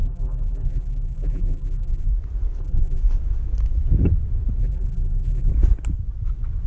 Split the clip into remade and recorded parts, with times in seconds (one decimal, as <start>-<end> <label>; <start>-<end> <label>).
0.0-2.1 remade; 2.1-2.6 recorded; 2.6-3.0 remade; 3.0-4.6 recorded; 4.6-5.5 remade; 5.5-6.7 recorded